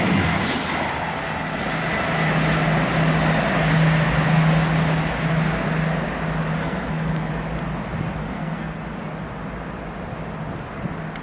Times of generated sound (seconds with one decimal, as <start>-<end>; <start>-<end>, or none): 6.6-7.3; 8.2-8.8